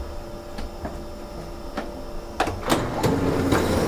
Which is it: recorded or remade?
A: recorded